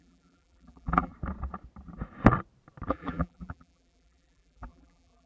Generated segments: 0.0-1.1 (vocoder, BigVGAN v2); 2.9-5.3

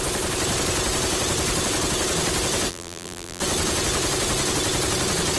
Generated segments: 2.7-3.4 (vocoder, BigVGAN v2)

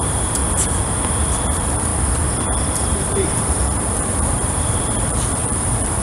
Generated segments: 0.0-0.4 (vocoder, BigVGAN v2); 1.3-1.9; 2.7-6.0

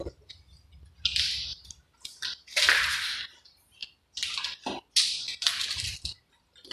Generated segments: 3.8-4.8 (vocoder, BigVGAN v2); 5.3-6.7

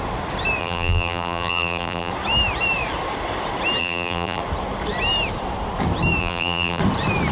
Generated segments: 0.6-2.1 (vocoder, BigVGAN v2); 3.8-4.4; 6.2-6.8